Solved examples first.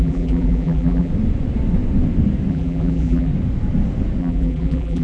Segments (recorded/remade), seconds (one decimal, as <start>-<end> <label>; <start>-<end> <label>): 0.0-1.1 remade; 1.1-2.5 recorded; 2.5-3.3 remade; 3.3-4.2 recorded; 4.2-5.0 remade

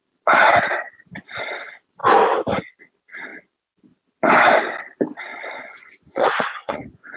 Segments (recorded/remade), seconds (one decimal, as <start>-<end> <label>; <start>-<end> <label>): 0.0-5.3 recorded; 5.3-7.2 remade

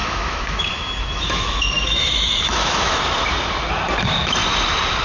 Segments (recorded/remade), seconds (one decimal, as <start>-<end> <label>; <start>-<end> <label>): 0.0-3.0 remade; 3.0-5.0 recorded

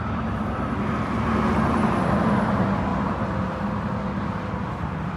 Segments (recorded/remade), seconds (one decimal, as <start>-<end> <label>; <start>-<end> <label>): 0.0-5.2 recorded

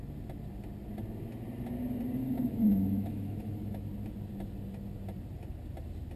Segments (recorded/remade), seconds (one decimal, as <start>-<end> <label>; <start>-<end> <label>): 0.0-2.2 recorded; 2.2-3.9 remade; 3.9-6.2 recorded

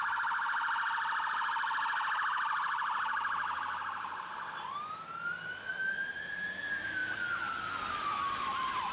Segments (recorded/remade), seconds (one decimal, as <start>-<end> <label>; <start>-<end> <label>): 0.0-8.9 recorded